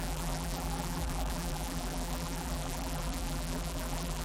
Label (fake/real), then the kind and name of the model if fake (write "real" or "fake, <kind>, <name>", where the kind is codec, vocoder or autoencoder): fake, vocoder, BigVGAN v2